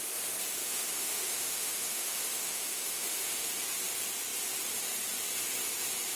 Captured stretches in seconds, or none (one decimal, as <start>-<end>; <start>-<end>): 0.0-0.6; 3.5-6.2